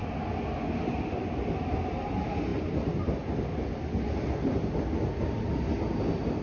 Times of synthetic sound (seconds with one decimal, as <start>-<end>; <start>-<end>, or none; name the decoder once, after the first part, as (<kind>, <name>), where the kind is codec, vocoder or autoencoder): none